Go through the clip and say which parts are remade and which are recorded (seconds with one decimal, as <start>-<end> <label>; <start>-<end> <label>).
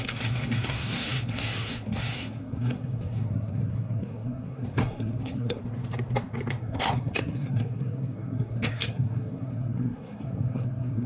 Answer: 0.0-5.6 remade; 5.6-6.6 recorded; 6.6-11.1 remade